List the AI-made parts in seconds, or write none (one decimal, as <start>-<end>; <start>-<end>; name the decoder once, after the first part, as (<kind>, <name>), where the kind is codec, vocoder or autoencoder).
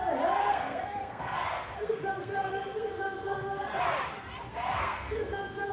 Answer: 0.4-3.8 (codec, SNAC); 4.5-5.7